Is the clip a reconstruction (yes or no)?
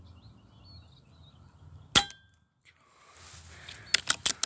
no